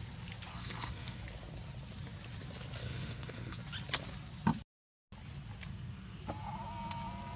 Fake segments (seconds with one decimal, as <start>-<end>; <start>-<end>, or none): 0.5-1.2; 2.8-3.6; 5.7-6.2